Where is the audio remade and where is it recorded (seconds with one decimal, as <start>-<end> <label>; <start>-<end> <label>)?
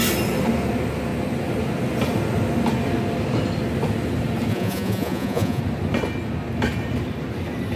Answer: 0.0-4.5 recorded; 4.5-5.6 remade; 5.6-7.8 recorded